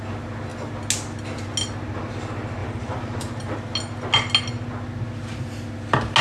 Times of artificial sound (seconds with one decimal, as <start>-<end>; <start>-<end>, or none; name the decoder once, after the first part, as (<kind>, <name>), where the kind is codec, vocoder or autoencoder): 2.6-3.7 (vocoder, BigVGAN v2)

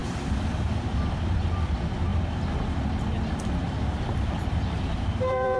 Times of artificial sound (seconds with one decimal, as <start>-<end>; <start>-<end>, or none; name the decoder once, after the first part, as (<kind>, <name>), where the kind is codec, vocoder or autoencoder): 0.0-2.1 (vocoder, BigVGAN v2); 4.2-5.6